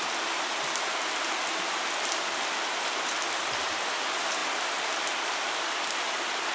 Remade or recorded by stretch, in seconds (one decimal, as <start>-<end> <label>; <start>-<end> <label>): 0.0-6.5 recorded